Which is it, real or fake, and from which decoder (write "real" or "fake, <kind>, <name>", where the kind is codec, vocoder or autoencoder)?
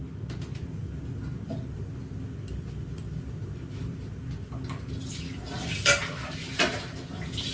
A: real